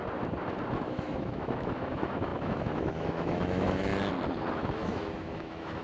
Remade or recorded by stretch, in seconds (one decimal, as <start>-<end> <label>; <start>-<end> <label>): 0.0-0.7 recorded; 0.7-3.9 remade; 3.9-4.5 recorded; 4.5-5.8 remade

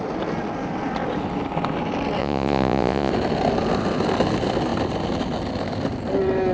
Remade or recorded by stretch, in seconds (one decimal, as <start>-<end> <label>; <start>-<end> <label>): 0.0-2.2 recorded; 2.2-3.1 remade; 3.1-6.5 recorded

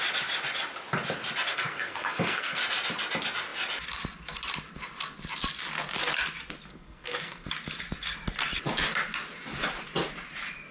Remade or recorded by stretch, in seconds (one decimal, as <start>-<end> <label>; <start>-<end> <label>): 0.0-1.5 recorded; 1.5-2.6 remade; 2.6-6.7 recorded; 6.7-7.5 remade; 7.5-10.7 recorded

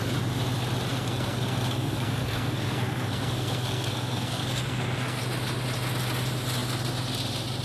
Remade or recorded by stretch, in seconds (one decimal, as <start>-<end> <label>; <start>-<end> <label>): 0.0-0.9 recorded; 0.9-5.2 remade; 5.2-7.6 recorded

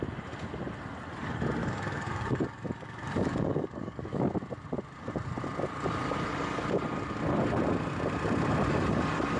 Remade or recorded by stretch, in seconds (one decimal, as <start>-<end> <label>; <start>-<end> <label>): 0.0-1.6 recorded; 1.6-4.2 remade; 4.2-9.4 recorded

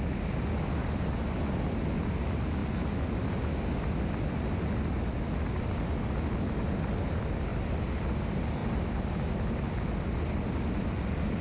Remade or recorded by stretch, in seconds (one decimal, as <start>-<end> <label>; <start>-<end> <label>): 0.0-8.6 recorded; 8.6-9.2 remade; 9.2-11.4 recorded

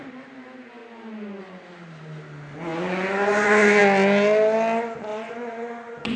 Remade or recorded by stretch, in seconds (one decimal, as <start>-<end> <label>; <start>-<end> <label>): 0.0-2.7 recorded; 2.7-3.8 remade; 3.8-5.1 recorded; 5.1-6.2 remade